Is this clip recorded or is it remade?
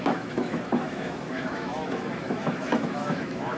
remade